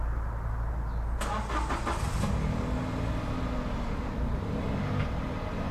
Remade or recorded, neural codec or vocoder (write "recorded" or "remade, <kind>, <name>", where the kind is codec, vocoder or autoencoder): recorded